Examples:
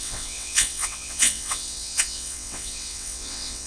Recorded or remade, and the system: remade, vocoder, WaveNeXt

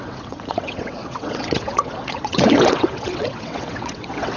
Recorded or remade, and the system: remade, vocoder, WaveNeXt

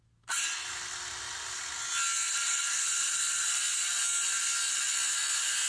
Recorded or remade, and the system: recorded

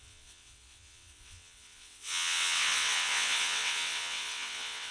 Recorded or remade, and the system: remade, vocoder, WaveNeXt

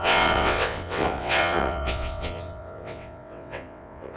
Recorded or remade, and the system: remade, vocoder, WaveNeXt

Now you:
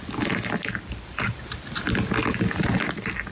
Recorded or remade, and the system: recorded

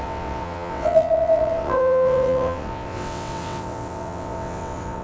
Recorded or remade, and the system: remade, vocoder, WaveNeXt